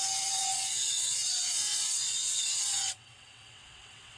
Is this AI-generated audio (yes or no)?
yes